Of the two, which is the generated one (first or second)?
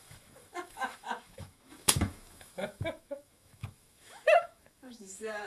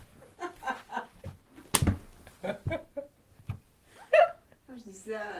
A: first